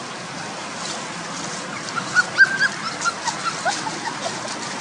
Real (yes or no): yes